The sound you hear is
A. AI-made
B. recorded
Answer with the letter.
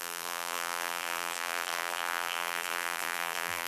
A